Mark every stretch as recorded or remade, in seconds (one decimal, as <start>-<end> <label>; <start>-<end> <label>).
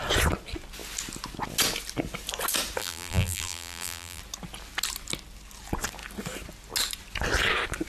0.0-2.8 recorded; 2.8-4.2 remade; 4.2-7.9 recorded